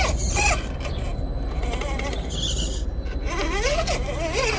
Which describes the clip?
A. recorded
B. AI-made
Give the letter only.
A